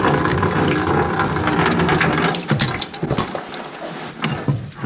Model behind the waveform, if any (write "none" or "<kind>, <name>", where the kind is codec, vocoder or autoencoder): vocoder, BigVGAN v2